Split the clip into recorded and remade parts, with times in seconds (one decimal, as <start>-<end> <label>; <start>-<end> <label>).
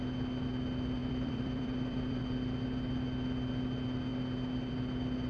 0.0-1.0 recorded; 1.0-2.2 remade; 2.2-5.3 recorded